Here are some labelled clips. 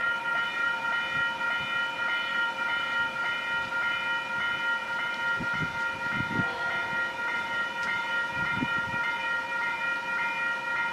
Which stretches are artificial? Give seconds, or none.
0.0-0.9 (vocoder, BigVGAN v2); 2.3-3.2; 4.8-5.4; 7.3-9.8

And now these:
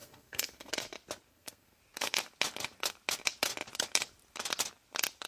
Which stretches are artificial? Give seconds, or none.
0.0-0.7 (codec, SNAC); 1.3-1.8